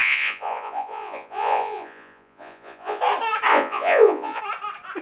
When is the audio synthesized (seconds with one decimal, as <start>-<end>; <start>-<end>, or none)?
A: 0.0-3.0; 3.5-4.4